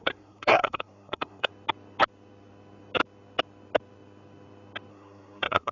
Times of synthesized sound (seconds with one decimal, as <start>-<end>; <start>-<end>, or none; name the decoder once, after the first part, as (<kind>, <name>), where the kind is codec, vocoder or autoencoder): 0.0-1.5 (codec, SNAC); 4.9-5.7

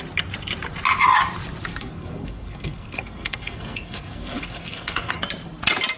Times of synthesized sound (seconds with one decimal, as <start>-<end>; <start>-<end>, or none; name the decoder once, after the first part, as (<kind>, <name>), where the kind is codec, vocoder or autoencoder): 1.7-5.1 (codec, SNAC)